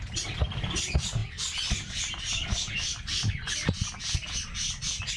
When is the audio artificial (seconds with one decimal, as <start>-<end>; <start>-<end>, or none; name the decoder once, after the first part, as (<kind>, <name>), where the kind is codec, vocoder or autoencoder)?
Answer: none